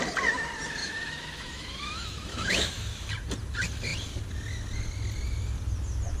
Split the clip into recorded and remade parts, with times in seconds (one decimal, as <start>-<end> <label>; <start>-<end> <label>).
0.0-0.8 recorded; 0.8-3.1 remade; 3.1-6.2 recorded